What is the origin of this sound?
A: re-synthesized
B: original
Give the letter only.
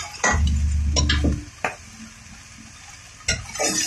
B